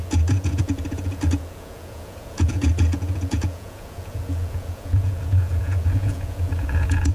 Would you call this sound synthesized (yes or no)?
yes